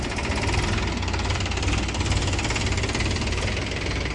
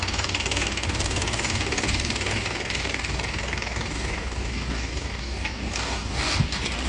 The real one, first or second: first